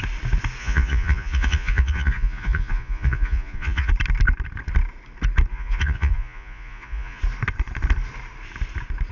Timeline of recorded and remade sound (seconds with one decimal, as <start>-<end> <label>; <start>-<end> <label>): 0.0-0.6 recorded; 0.6-3.9 remade; 3.9-5.5 recorded; 5.5-7.2 remade; 7.2-9.1 recorded